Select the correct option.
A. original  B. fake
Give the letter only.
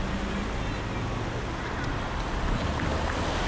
A